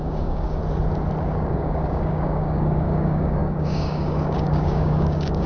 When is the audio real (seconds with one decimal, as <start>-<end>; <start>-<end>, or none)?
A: 0.6-1.2